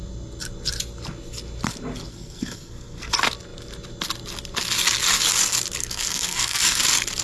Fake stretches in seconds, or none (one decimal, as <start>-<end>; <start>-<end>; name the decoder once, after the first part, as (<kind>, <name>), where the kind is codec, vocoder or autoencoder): 2.1-3.1 (codec, SNAC); 5.8-6.8